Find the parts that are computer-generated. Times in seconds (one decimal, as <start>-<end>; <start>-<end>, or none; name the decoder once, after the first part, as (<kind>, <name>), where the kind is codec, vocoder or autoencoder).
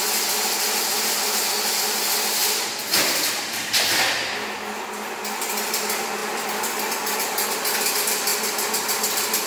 2.4-3.9 (vocoder, BigVGAN v2)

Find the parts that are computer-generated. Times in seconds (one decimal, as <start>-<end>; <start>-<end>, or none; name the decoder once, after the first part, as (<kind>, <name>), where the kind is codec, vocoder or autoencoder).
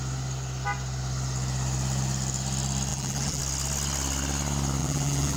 2.9-3.4 (vocoder, BigVGAN v2); 4.8-5.4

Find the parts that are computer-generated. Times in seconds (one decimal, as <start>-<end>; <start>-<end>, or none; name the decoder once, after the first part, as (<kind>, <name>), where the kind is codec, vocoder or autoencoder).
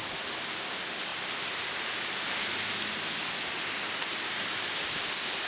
1.1-2.6 (vocoder, BigVGAN v2)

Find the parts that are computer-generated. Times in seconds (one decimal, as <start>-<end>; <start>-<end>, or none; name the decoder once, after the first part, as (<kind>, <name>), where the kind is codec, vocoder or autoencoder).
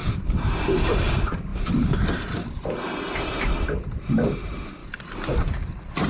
0.0-1.0 (vocoder, BigVGAN v2); 4.8-6.1